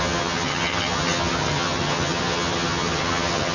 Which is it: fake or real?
fake